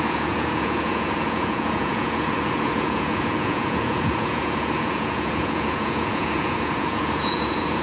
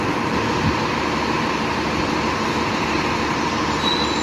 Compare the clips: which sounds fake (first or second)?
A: first